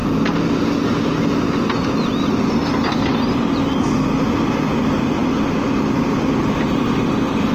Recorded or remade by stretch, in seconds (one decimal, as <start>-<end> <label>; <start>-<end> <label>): 0.0-7.5 recorded